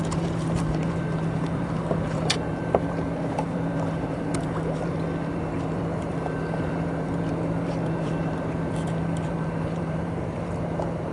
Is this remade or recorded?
remade